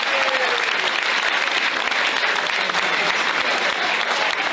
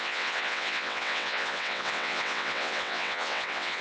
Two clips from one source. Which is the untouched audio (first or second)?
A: first